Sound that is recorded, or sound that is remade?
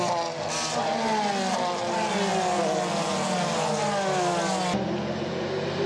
recorded